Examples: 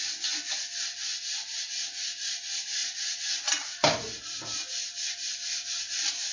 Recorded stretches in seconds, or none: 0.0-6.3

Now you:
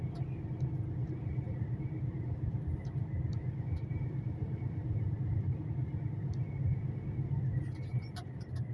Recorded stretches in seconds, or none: 0.0-1.0; 5.7-7.9

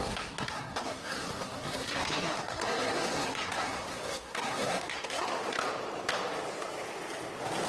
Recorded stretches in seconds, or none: 5.3-7.7

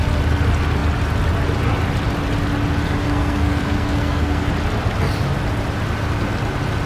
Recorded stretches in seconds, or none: 0.0-3.0; 4.5-6.9